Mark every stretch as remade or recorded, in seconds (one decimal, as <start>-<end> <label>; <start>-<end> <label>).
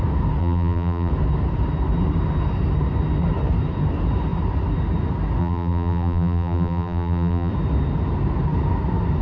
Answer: 0.0-0.4 recorded; 0.4-1.1 remade; 1.1-5.4 recorded; 5.4-7.5 remade; 7.5-9.2 recorded